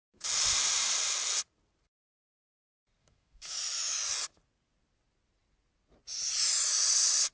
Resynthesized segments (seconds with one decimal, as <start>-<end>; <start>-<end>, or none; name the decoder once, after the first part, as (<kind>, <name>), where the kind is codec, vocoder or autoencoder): 3.0-3.6 (autoencoder, DAC-VAE)